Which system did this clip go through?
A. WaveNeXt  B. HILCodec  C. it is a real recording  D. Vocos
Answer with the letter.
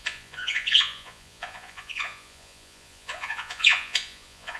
D